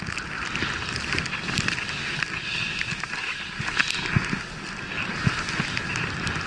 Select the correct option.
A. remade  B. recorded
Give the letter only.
B